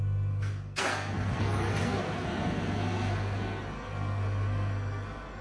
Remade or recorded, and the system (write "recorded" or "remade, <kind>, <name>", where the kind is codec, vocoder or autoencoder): remade, codec, SNAC